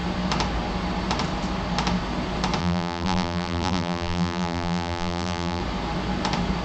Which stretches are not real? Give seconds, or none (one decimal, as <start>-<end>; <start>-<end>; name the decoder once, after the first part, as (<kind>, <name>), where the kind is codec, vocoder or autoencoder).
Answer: 2.6-5.6 (vocoder, BigVGAN v2)